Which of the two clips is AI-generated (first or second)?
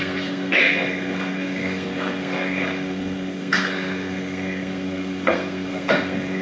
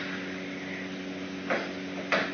first